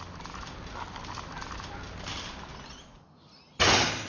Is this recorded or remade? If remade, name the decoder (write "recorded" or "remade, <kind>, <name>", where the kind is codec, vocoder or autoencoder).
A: recorded